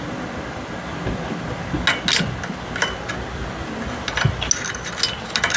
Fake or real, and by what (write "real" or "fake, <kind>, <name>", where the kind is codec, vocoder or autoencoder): real